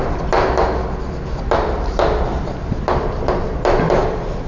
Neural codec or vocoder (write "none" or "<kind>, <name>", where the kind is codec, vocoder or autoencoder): none